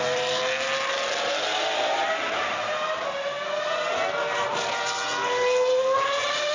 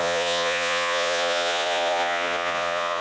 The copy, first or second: second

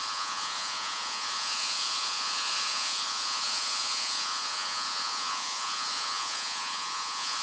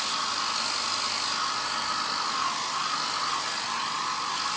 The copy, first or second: first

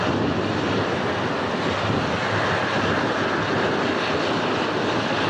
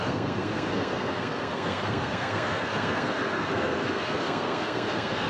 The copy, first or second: second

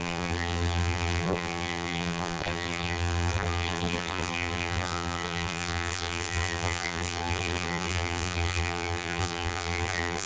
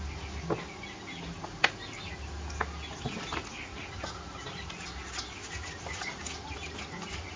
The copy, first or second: first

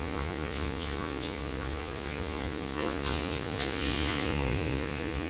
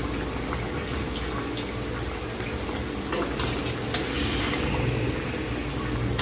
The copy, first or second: first